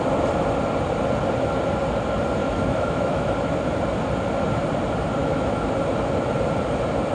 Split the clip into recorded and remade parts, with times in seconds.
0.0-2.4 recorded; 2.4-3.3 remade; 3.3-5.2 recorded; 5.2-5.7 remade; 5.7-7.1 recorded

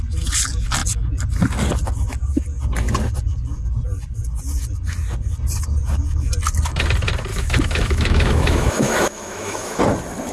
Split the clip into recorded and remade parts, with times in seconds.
0.0-7.3 recorded; 7.3-9.8 remade; 9.8-10.3 recorded

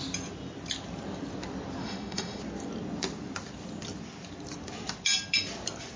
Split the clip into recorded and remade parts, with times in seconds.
0.0-1.8 recorded; 1.8-2.4 remade; 2.4-6.0 recorded

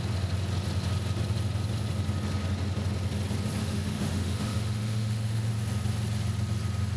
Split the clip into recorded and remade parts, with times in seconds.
0.0-3.6 recorded; 3.6-5.5 remade; 5.5-7.0 recorded

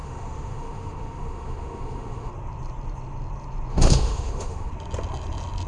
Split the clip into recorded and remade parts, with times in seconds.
0.0-2.3 remade; 2.3-3.7 recorded; 3.7-4.7 remade; 4.7-5.7 recorded

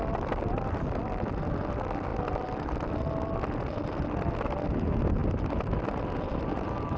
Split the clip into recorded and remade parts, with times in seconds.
0.0-7.0 recorded